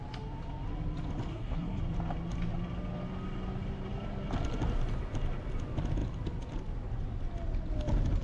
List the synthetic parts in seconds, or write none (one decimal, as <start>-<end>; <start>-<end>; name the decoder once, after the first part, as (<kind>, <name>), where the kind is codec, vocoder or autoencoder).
1.3-1.8 (codec, SNAC)